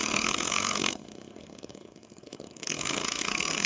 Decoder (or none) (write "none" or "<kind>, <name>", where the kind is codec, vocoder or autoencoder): codec, SNAC